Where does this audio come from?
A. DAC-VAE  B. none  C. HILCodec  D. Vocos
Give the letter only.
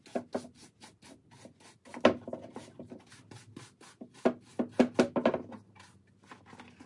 B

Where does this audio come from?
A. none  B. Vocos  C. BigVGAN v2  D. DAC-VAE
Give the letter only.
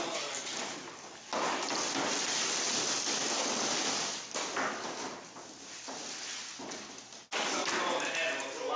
A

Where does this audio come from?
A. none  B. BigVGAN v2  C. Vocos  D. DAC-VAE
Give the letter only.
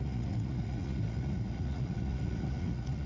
C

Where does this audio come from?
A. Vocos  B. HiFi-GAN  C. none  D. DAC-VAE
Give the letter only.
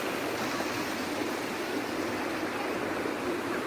C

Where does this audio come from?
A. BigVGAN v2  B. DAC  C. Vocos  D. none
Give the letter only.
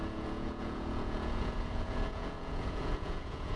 C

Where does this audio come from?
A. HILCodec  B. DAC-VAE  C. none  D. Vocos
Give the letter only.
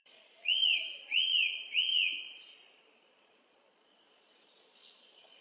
D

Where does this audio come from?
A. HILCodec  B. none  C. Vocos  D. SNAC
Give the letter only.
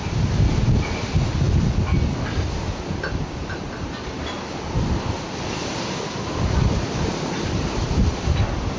B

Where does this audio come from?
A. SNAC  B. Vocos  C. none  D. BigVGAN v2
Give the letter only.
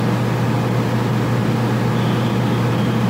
C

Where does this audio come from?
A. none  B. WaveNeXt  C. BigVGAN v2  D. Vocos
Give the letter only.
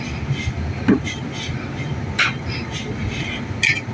A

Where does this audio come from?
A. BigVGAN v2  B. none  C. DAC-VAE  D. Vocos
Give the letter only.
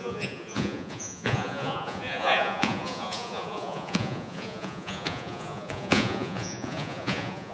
D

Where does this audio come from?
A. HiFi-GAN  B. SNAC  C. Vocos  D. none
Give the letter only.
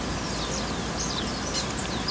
D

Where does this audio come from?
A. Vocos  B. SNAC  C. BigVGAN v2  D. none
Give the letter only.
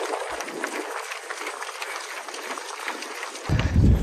D